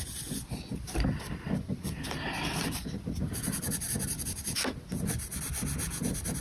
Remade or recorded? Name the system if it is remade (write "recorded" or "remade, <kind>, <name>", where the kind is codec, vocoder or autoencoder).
recorded